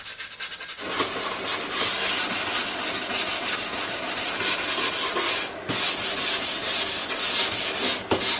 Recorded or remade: recorded